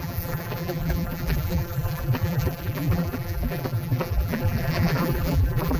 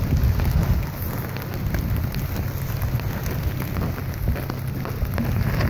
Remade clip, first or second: first